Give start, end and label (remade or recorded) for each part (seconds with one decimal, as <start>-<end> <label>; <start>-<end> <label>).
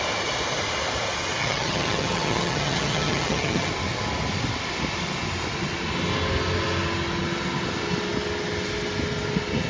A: 0.0-1.4 recorded; 1.4-3.7 remade; 3.7-9.7 recorded